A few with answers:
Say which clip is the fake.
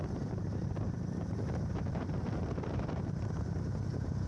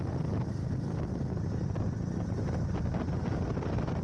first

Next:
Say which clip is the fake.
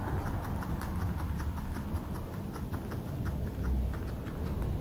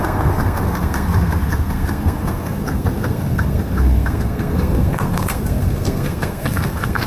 second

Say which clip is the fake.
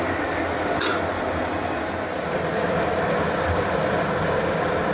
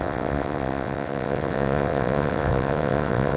second